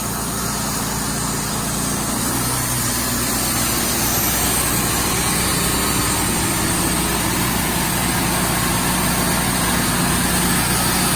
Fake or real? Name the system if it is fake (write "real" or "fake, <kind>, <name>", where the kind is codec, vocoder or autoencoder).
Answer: real